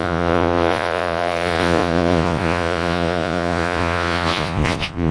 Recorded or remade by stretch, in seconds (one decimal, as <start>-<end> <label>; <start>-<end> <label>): 0.0-5.1 remade